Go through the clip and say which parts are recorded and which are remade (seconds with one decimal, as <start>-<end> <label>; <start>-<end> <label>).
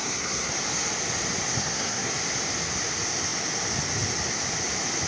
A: 0.0-0.5 remade; 0.5-1.5 recorded; 1.5-2.1 remade; 2.1-5.1 recorded